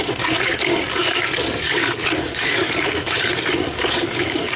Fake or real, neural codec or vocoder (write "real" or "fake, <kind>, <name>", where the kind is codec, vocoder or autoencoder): fake, codec, DAC